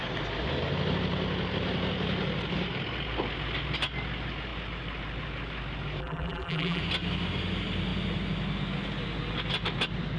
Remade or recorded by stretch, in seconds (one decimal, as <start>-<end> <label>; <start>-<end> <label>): 0.0-6.0 recorded; 6.0-6.8 remade; 6.8-10.2 recorded